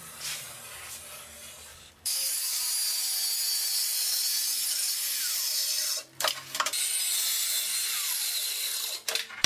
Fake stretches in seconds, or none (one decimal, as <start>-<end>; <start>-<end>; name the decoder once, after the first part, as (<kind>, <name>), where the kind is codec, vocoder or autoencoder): 1.7-2.6 (codec, DAC)